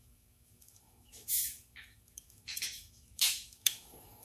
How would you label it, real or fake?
fake